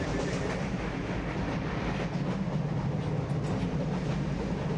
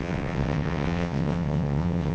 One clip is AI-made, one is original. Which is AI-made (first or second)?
second